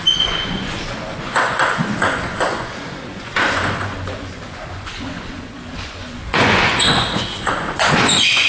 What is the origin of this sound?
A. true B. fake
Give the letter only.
B